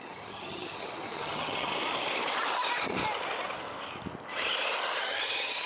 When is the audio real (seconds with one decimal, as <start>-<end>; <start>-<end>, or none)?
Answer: 1.7-5.1